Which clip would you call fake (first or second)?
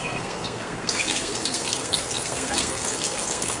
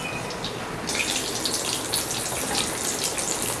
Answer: first